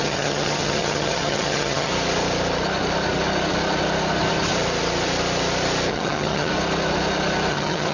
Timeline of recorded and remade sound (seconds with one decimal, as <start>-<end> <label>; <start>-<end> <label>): 0.0-1.9 remade; 1.9-5.9 recorded; 5.9-6.5 remade; 6.5-7.5 recorded; 7.5-7.9 remade